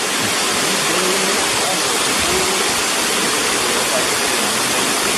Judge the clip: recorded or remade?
recorded